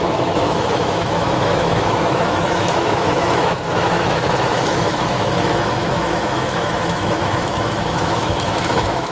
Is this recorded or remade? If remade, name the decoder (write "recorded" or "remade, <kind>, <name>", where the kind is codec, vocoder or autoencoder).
remade, autoencoder, DAC-VAE